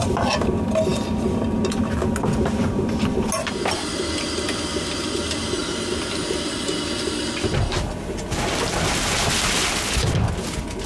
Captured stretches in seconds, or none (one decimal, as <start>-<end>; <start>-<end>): 0.0-10.9